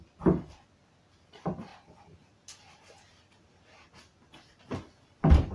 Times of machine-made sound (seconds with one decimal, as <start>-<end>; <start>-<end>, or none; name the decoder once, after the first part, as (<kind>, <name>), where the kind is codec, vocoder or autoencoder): none